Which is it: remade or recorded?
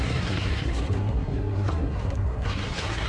remade